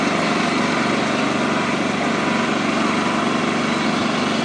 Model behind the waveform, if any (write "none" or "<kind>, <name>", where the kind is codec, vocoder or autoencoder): none